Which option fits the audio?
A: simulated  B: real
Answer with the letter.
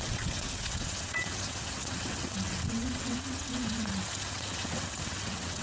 A